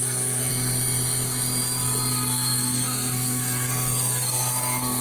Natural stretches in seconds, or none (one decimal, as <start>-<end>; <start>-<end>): 0.5-2.1